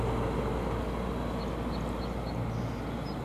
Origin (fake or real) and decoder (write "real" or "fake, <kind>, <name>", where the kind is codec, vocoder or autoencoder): real